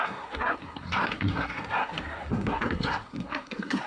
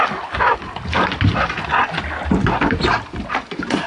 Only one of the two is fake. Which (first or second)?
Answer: first